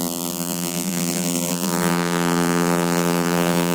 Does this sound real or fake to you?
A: fake